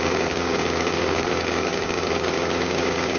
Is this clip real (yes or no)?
no